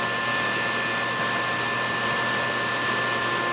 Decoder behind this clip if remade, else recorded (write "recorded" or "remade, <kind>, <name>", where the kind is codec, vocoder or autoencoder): recorded